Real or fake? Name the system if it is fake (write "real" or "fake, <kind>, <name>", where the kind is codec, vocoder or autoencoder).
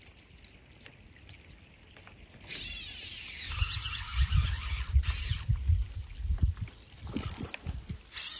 real